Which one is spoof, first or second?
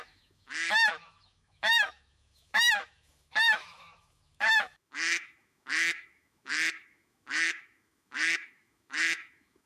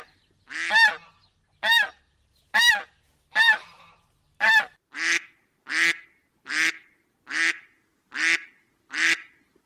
first